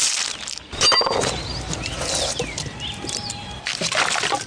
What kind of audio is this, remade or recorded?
recorded